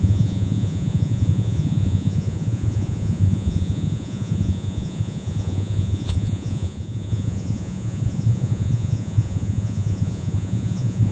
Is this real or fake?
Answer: fake